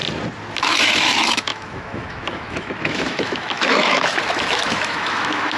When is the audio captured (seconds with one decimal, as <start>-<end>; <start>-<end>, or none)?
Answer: 0.0-0.6